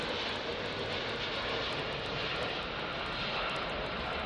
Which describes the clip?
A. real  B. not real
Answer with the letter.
A